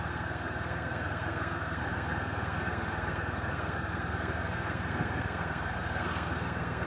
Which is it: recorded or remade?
remade